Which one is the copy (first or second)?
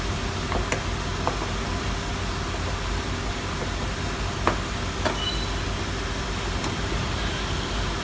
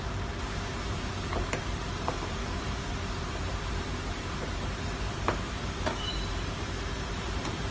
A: second